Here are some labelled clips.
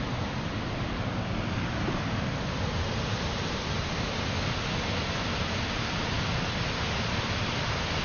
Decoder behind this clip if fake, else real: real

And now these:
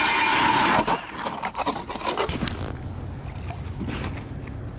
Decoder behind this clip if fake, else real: real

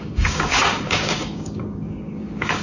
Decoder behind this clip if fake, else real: fake, codec, DAC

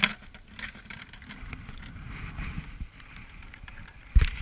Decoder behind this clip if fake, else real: real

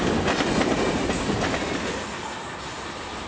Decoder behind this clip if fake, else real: real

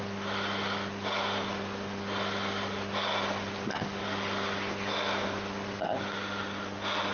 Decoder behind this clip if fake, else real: real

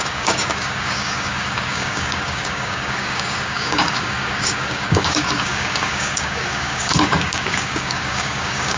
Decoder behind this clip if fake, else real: fake, codec, DAC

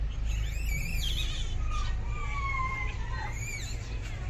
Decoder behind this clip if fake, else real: real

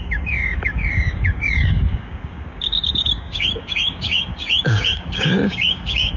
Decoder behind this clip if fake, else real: fake, codec, DAC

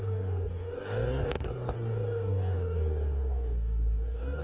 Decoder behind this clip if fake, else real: fake, codec, DAC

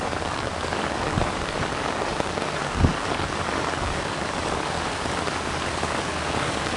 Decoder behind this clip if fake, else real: fake, codec, DAC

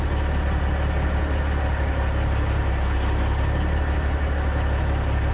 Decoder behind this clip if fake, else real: real